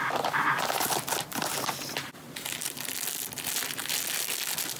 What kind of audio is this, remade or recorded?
recorded